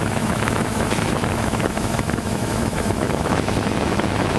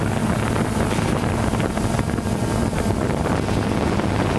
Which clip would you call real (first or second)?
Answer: second